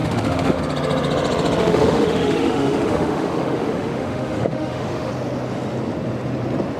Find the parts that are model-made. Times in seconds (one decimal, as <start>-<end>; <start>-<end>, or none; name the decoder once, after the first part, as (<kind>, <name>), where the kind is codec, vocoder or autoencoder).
0.0-0.6 (autoencoder, DAC-VAE); 1.6-5.1